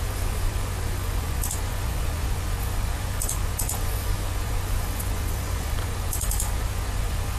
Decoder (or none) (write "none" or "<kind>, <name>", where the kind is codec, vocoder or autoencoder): vocoder, Vocos